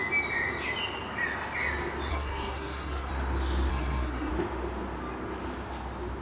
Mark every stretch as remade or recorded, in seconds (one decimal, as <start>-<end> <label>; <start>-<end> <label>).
0.0-2.1 recorded; 2.1-3.1 remade; 3.1-3.7 recorded; 3.7-4.3 remade; 4.3-6.2 recorded